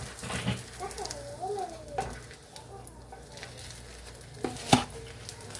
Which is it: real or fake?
real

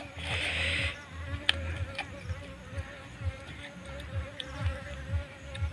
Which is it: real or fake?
real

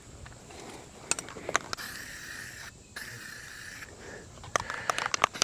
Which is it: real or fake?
real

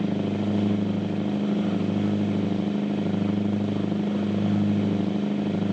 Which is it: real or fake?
real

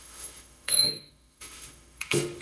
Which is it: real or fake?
fake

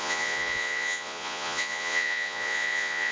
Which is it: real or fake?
fake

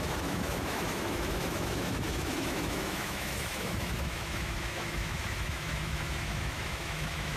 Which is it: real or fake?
fake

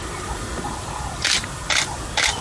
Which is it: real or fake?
real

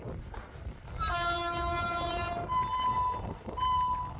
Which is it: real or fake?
real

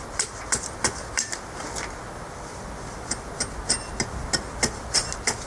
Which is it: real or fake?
real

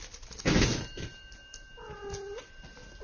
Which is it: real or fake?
real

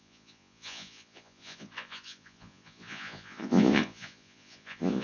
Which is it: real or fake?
fake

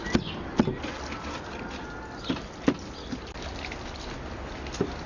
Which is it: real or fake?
real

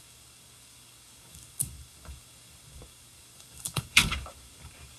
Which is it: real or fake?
fake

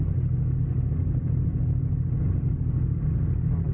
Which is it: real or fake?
real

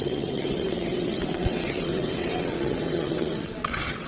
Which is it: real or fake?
fake